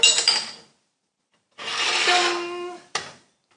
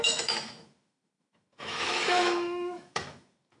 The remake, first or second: second